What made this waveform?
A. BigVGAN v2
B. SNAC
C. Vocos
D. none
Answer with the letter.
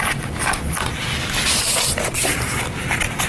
D